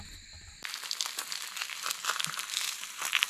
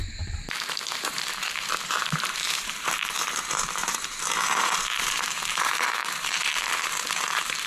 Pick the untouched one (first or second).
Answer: first